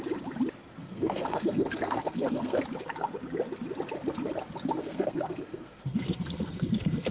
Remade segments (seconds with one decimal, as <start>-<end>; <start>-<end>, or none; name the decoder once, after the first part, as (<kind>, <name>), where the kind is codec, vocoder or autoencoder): 0.8-2.6 (codec, SNAC); 4.8-7.1